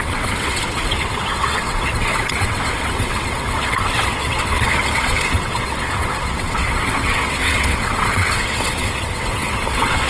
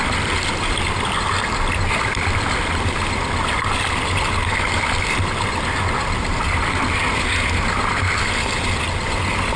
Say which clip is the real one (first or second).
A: second